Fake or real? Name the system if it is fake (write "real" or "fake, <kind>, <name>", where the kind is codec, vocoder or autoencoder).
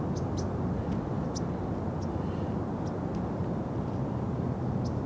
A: real